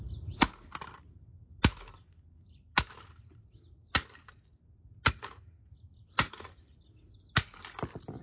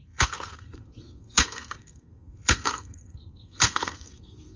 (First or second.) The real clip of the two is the first